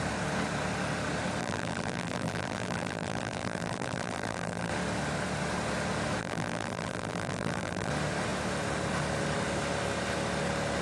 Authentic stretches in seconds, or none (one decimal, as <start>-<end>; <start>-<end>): 0.0-1.4; 4.7-6.2; 7.9-10.8

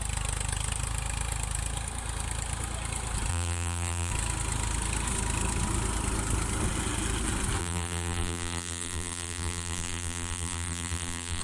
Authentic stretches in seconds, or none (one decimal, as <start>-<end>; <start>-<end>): 0.0-3.3; 4.1-7.6